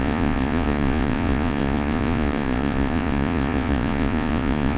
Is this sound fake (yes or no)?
yes